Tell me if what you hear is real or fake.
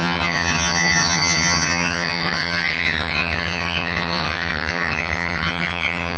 fake